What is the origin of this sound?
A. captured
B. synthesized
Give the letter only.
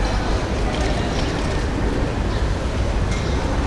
A